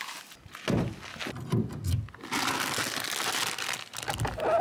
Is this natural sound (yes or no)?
yes